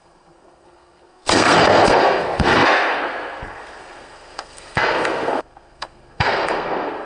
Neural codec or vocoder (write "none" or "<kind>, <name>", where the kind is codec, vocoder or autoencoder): codec, SNAC